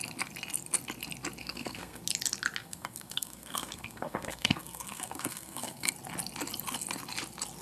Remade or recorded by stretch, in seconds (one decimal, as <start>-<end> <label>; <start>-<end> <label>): 0.0-1.4 recorded; 1.4-2.0 remade; 2.0-2.6 recorded; 2.6-5.9 remade; 5.9-7.6 recorded